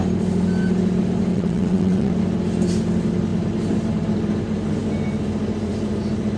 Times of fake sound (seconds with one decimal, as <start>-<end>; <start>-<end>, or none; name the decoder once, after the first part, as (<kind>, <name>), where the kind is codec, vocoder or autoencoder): 1.3-2.1 (vocoder, WaveNeXt)